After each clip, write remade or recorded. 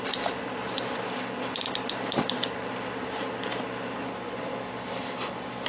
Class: recorded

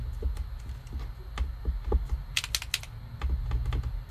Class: recorded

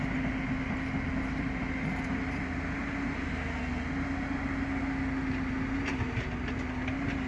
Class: recorded